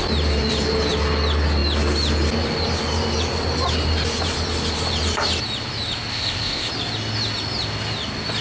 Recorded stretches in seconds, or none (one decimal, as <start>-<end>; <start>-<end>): 0.0-6.1; 6.7-8.4